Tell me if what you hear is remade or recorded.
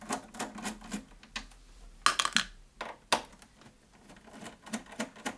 recorded